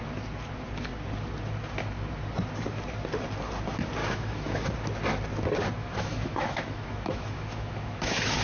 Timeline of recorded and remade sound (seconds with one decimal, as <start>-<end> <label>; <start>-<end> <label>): 0.0-4.0 recorded; 4.0-4.7 remade; 4.7-5.8 recorded; 5.8-8.4 remade